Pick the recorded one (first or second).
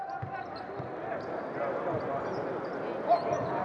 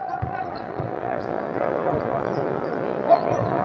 first